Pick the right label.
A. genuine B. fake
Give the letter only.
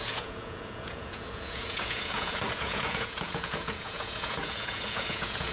B